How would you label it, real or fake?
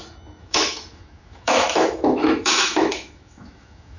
fake